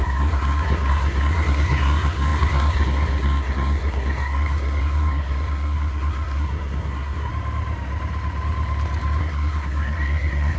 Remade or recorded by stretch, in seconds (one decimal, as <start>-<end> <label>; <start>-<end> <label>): 0.0-7.3 remade; 7.3-9.2 recorded; 9.2-10.6 remade